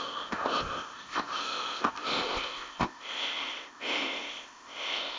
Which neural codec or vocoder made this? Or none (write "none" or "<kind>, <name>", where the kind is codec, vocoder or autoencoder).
codec, ZipCodec